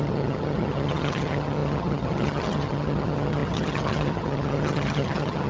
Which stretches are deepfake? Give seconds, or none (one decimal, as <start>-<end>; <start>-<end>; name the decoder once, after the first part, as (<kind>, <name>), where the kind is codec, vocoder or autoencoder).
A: 0.0-5.5 (vocoder, HiFi-GAN)